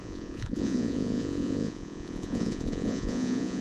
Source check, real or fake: fake